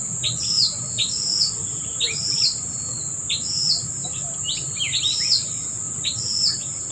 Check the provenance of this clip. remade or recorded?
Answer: recorded